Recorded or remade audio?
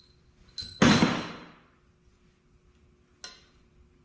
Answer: recorded